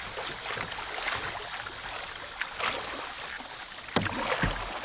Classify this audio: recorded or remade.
recorded